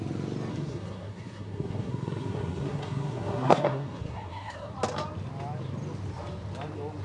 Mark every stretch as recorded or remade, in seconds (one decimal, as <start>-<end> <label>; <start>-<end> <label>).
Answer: 0.0-0.5 recorded; 0.5-4.7 remade; 4.7-7.0 recorded